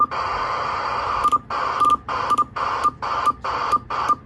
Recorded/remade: recorded